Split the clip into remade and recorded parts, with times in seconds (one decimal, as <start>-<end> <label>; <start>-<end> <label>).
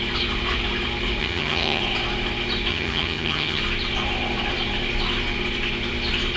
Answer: 0.0-1.2 recorded; 1.2-1.8 remade; 1.8-2.7 recorded; 2.7-3.6 remade; 3.6-6.4 recorded